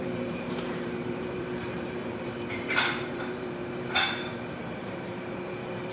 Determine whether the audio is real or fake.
fake